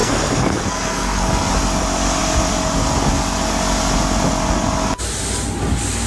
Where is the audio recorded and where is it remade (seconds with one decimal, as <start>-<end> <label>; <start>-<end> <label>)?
0.0-1.5 remade; 1.5-6.1 recorded